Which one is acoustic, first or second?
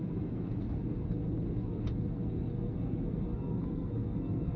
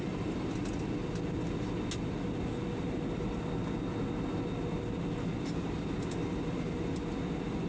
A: second